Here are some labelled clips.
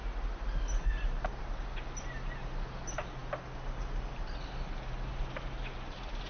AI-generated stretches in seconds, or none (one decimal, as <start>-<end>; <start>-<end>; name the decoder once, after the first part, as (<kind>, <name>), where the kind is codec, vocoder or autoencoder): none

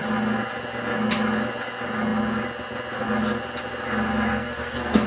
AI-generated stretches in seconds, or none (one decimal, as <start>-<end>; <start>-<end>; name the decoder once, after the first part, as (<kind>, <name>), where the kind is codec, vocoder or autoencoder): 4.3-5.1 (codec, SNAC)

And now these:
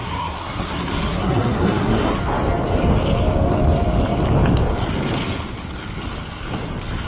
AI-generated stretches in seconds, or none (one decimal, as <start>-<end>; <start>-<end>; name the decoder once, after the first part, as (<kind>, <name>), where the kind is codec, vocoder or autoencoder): 0.0-2.1 (codec, SNAC)

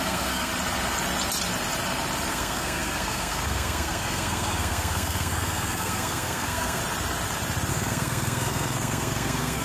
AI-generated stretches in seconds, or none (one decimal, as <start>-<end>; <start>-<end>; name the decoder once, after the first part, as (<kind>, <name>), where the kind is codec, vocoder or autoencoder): 0.0-0.5 (codec, SNAC); 2.3-6.8; 7.7-9.6